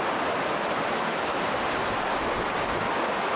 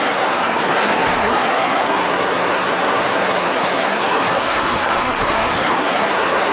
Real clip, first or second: first